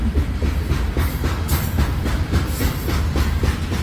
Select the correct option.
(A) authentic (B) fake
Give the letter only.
A